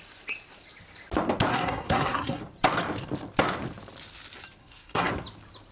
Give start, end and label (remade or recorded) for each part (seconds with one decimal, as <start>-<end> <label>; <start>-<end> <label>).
0.0-1.5 recorded; 1.5-2.4 remade; 2.4-4.6 recorded; 4.6-5.1 remade; 5.1-5.7 recorded